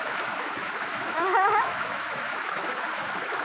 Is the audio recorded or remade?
remade